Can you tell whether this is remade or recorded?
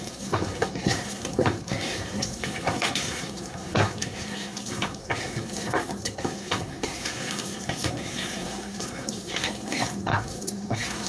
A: remade